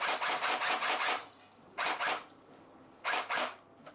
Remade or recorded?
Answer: recorded